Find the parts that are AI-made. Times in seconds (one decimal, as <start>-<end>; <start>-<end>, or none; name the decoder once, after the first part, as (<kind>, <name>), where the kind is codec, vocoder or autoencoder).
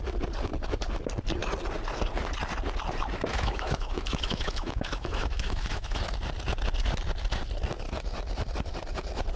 3.3-6.0 (autoencoder, DAC-VAE)